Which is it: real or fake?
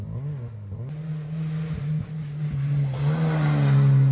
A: real